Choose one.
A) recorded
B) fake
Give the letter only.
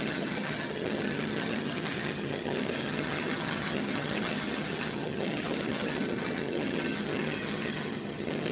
B